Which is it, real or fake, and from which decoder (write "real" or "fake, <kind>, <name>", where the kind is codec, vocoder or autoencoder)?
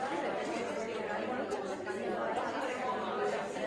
fake, vocoder, BigVGAN v2